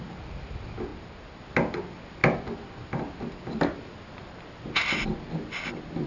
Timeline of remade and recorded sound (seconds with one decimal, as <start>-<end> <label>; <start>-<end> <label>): 0.0-6.1 recorded